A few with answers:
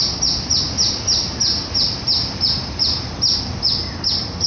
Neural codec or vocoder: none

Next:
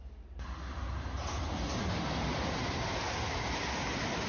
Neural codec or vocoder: none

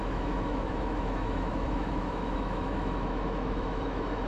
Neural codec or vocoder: autoencoder, DAC-VAE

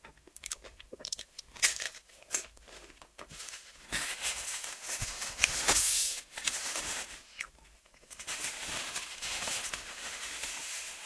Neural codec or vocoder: autoencoder, DAC-VAE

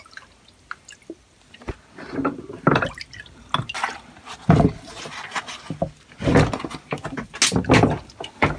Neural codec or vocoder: none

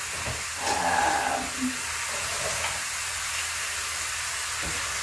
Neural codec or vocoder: none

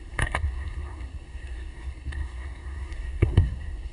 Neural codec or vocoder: codec, SNAC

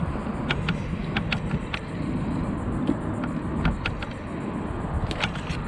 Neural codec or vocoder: none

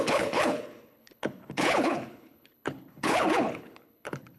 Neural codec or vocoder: codec, HILCodec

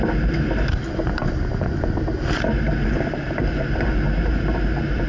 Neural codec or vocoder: none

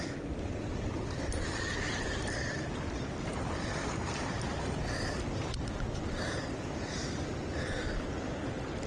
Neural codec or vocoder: none